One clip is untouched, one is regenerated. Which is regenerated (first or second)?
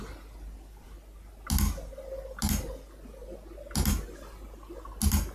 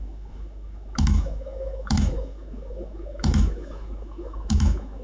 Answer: second